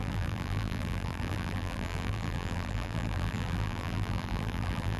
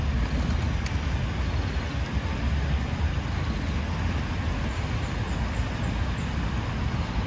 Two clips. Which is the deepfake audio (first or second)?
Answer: first